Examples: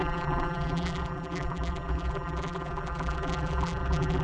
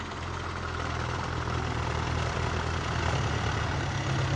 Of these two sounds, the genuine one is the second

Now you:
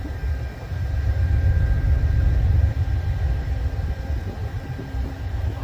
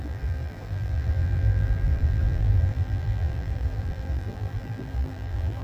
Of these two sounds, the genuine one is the first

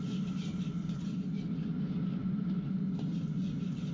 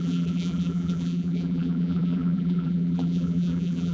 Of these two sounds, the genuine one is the first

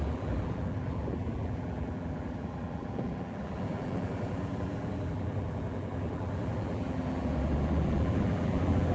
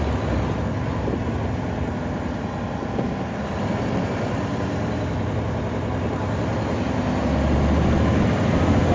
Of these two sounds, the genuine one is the second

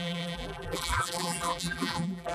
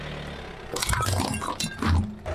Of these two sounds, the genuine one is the second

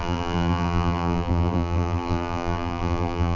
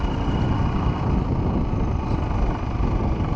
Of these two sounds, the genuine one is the second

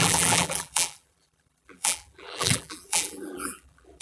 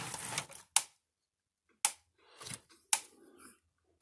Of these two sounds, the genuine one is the second